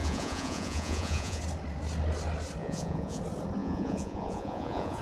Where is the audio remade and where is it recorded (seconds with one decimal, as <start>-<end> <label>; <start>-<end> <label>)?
0.0-1.4 remade; 1.4-2.6 recorded; 2.6-3.2 remade; 3.2-3.6 recorded; 3.6-5.0 remade